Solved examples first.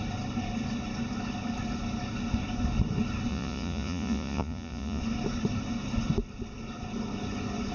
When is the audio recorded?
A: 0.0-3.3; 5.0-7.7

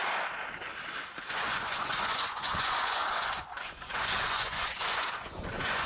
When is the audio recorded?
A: 0.0-1.3

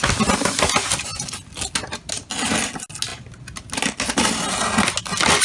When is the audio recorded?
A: 0.0-5.4

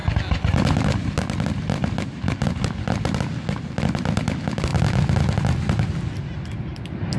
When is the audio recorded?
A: 0.0-7.2

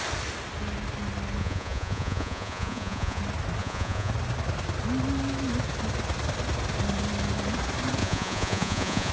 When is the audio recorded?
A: 0.0-1.4; 3.2-3.6; 4.1-8.0

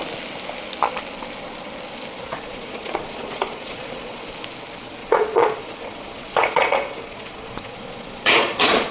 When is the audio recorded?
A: 0.0-2.2; 4.3-5.0

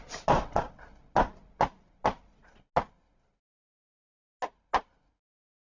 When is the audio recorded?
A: 0.0-5.8